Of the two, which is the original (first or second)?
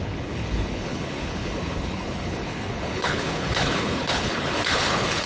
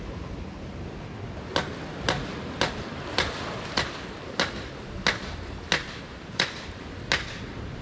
second